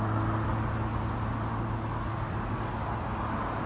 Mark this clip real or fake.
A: real